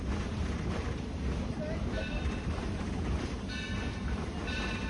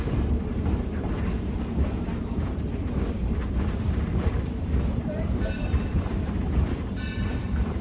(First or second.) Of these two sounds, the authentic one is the first